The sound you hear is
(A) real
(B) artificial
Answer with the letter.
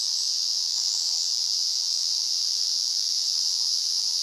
B